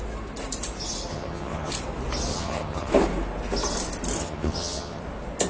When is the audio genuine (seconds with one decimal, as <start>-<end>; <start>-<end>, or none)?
0.0-1.1; 1.7-2.3; 2.9-4.2; 5.0-5.5